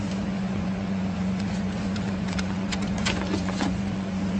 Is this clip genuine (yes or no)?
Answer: no